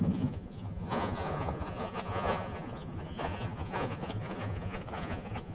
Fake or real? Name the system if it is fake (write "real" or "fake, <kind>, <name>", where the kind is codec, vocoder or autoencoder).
fake, vocoder, Vocos